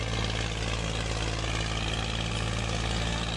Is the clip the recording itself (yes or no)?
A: yes